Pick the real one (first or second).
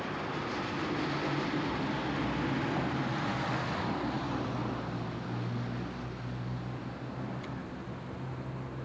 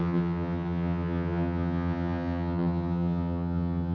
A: first